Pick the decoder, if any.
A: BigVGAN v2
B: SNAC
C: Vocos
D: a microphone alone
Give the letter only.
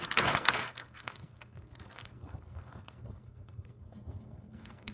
B